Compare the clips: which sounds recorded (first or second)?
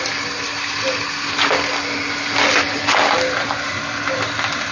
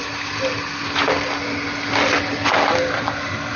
first